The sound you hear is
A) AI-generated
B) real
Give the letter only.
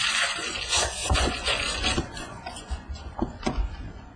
A